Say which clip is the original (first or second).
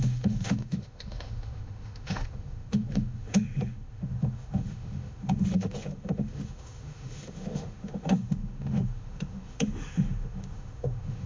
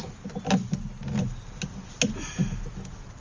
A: second